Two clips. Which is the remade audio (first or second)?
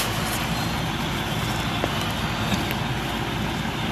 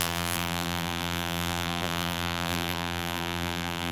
second